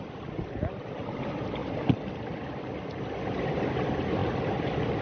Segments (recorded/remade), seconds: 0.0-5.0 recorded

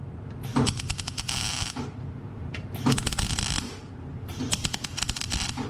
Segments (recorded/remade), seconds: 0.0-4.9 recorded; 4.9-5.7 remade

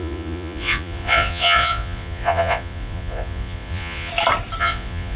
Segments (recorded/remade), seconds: 0.0-4.1 remade; 4.1-4.6 recorded; 4.6-5.2 remade

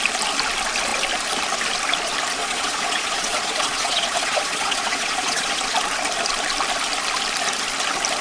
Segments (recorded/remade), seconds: 0.0-2.4 recorded; 2.4-5.6 remade; 5.6-8.2 recorded

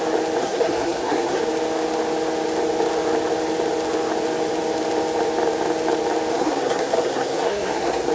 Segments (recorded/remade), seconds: 0.0-0.4 recorded; 0.4-1.4 remade; 1.4-6.3 recorded; 6.3-8.1 remade

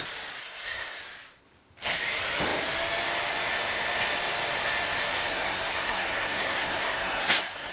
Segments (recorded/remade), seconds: 0.0-0.4 recorded; 0.4-1.0 remade; 1.0-5.3 recorded; 5.3-7.7 remade